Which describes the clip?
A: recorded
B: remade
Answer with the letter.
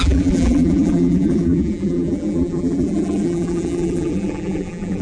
B